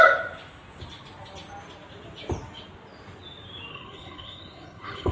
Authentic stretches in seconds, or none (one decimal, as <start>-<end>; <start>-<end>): 0.0-3.7

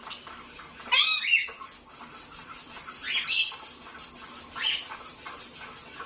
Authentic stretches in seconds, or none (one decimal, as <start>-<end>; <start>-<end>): 0.0-6.1